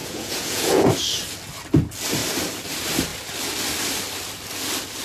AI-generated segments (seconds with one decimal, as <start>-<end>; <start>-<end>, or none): 0.0-0.9